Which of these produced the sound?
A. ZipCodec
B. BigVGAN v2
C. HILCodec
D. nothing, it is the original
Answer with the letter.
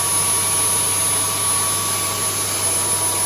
D